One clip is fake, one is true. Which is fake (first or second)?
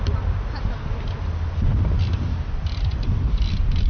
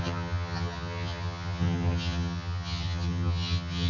second